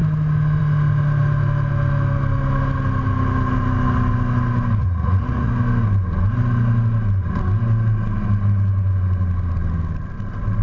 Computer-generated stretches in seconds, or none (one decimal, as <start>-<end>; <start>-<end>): 4.8-5.5

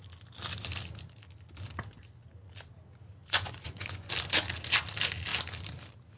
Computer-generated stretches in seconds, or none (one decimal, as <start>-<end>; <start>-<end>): 3.2-4.1

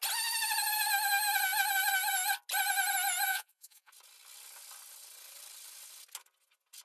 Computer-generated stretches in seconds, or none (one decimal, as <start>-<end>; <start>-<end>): 3.3-3.9

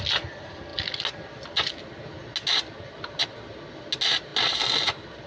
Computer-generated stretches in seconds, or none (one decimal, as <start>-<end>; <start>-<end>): none

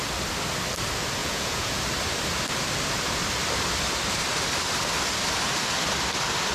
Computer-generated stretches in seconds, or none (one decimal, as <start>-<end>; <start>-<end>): 1.2-1.8

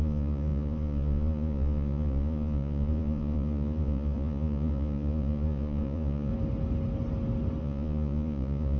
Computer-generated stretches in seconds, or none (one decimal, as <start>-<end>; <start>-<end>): 0.0-6.3; 7.6-8.8